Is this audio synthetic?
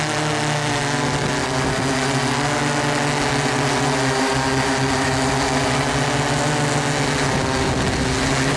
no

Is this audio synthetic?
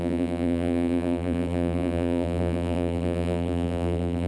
yes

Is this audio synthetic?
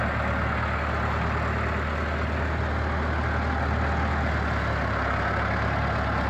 no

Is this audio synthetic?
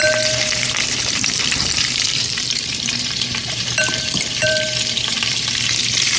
yes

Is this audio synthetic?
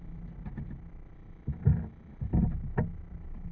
no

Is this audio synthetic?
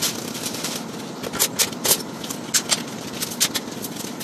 no